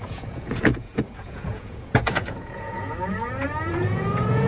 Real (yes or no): no